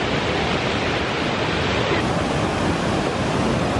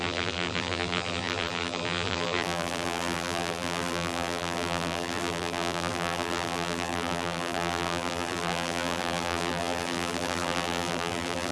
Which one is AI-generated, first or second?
second